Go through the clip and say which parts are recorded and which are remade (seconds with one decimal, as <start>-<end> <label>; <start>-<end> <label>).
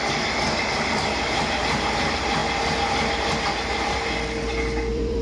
0.0-2.4 remade; 2.4-4.6 recorded; 4.6-5.2 remade